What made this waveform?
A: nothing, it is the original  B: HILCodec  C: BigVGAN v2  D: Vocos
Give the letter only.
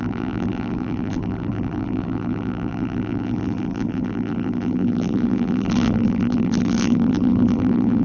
C